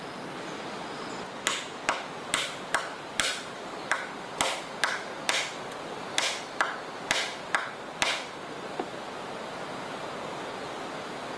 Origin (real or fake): real